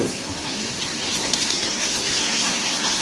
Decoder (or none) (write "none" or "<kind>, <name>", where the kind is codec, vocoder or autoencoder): codec, SNAC